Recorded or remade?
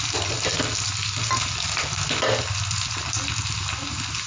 recorded